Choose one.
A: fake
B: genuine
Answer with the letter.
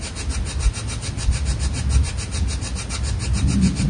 B